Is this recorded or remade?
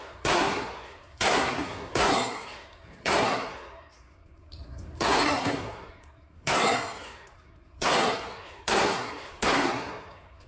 remade